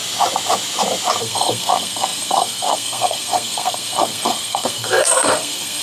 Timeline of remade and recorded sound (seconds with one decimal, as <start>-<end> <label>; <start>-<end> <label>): 0.0-1.2 recorded; 1.2-5.8 remade